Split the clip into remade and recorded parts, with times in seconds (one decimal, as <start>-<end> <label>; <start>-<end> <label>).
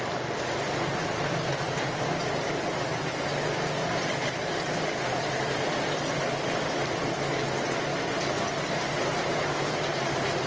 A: 0.0-2.9 recorded; 2.9-7.1 remade; 7.1-7.9 recorded; 7.9-9.9 remade; 9.9-10.5 recorded